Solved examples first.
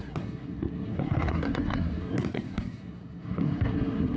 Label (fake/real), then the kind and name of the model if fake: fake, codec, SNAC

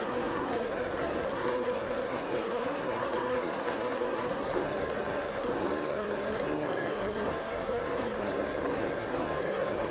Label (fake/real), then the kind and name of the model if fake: fake, codec, SNAC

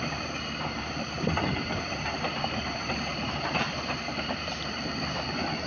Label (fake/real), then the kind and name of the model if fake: fake, vocoder, BigVGAN v2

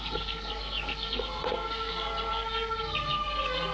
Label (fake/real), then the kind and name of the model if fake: fake, codec, SNAC